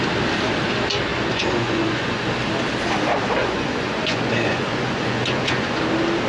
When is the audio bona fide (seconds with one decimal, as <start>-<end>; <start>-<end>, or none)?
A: 0.0-1.1; 2.3-3.4; 5.8-6.3